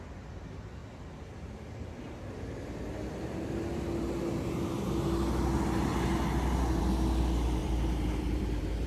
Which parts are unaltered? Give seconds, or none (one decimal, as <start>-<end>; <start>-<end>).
0.0-7.6